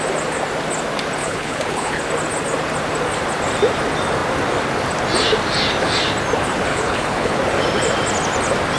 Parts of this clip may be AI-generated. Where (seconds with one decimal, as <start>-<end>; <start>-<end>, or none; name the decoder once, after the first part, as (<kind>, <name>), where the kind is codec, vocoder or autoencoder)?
1.2-2.0 (codec, HILCodec); 6.7-7.4